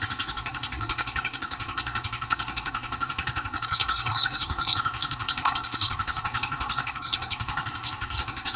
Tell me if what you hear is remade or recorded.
remade